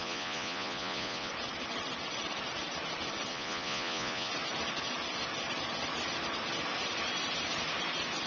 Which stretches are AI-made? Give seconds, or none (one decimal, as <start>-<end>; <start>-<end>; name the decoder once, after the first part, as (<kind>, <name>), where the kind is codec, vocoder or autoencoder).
0.0-1.3 (vocoder, Vocos); 3.3-4.3